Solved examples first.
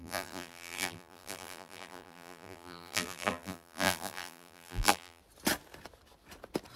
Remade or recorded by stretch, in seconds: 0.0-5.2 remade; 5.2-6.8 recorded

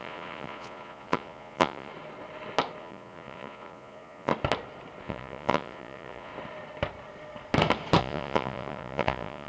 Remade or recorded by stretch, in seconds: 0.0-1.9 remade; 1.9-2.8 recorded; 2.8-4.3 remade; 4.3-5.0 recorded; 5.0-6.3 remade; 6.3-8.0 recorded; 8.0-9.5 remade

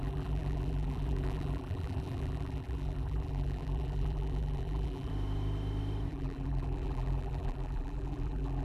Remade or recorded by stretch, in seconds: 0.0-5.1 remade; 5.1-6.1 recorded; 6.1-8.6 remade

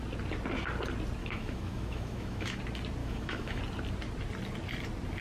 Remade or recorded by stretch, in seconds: 0.0-1.2 recorded; 1.2-2.6 remade; 2.6-3.0 recorded; 3.0-3.6 remade; 3.6-5.2 recorded